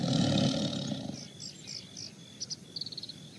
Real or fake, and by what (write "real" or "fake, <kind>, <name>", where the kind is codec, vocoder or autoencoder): real